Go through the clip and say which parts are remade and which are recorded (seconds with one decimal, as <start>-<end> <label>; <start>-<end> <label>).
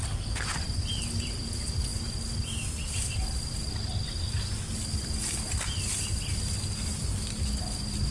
0.0-8.1 recorded